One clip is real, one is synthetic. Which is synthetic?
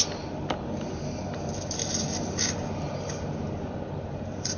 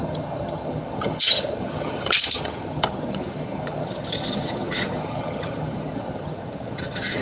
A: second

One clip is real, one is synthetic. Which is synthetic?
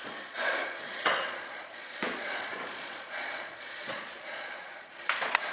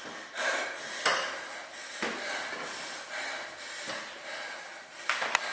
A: first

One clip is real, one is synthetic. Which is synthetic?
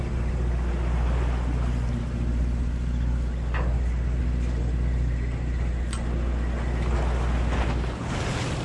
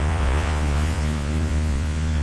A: second